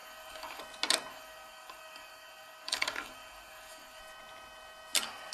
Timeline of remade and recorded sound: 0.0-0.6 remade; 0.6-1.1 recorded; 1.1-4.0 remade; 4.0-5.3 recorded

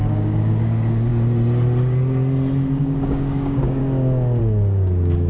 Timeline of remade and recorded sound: 0.0-1.1 remade; 1.1-2.8 recorded; 2.8-3.8 remade; 3.8-4.4 recorded; 4.4-5.3 remade